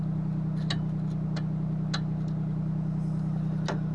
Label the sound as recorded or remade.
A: recorded